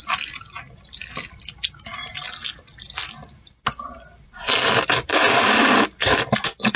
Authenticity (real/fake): real